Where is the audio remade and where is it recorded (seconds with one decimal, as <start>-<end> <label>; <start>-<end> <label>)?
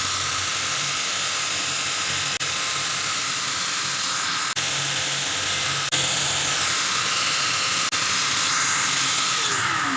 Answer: 0.0-10.0 recorded